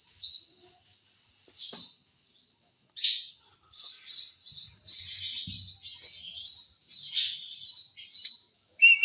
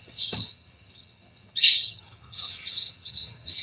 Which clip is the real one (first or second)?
first